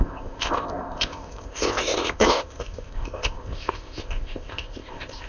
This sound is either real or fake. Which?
fake